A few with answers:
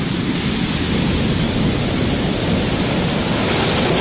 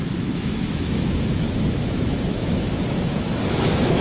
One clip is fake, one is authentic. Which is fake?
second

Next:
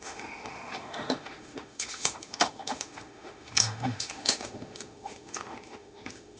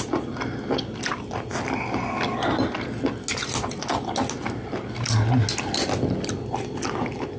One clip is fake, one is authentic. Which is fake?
first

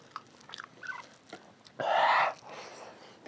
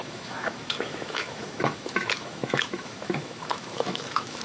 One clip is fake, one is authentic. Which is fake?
second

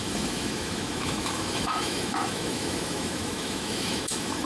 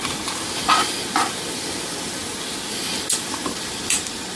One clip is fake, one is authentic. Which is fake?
first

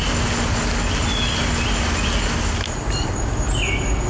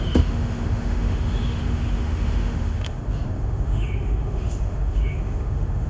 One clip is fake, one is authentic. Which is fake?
second